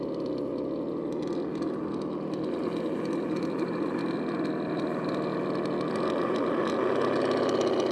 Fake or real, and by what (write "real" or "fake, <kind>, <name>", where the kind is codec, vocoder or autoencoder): real